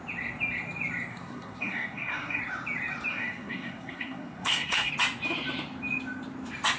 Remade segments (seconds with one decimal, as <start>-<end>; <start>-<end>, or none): 1.1-2.4; 3.1-4.9